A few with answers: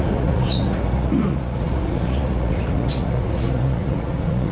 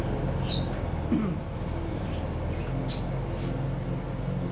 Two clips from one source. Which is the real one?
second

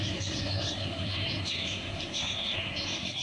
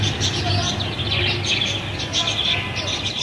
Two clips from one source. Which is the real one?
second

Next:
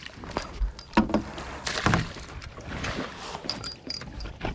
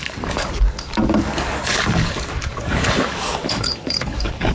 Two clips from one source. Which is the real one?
first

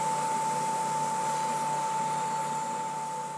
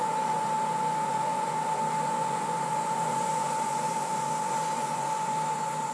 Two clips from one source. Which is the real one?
first